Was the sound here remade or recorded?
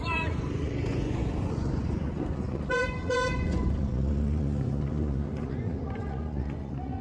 remade